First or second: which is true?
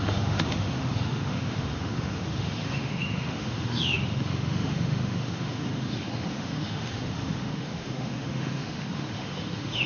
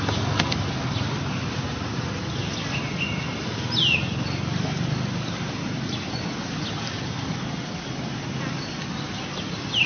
second